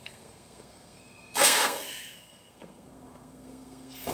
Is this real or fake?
fake